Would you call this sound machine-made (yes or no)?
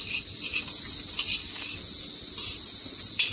no